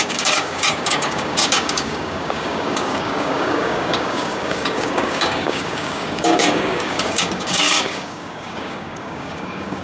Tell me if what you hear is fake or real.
fake